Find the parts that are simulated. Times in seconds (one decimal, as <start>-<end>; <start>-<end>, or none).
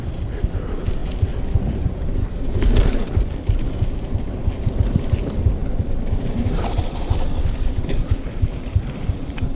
2.2-3.1; 7.4-8.4